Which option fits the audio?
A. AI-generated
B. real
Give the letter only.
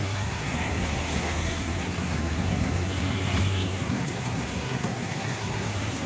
A